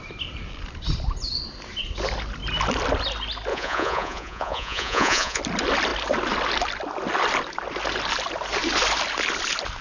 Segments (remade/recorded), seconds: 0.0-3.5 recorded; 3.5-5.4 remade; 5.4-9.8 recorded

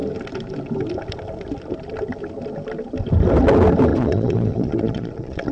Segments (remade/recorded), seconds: 0.0-3.9 recorded; 3.9-5.5 remade

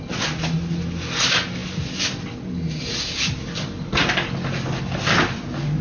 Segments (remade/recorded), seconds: 0.0-5.8 recorded

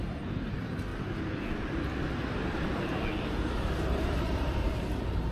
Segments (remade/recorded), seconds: 0.0-0.9 remade; 0.9-4.0 recorded; 4.0-5.3 remade